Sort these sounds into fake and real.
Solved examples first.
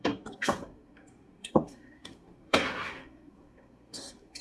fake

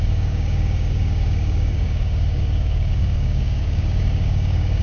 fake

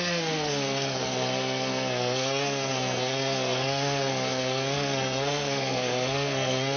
fake